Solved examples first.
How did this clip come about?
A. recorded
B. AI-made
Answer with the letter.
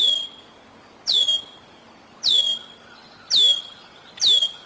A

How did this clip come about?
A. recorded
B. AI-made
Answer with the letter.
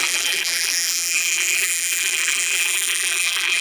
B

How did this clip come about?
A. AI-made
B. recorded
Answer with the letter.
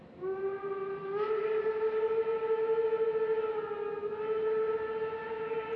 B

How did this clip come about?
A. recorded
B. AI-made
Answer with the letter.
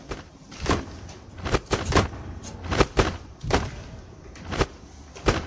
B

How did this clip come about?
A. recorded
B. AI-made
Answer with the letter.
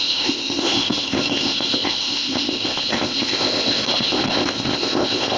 B